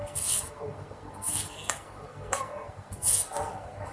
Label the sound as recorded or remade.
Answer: remade